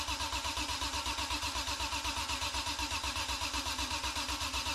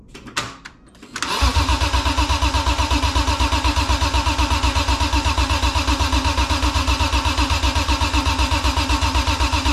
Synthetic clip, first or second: first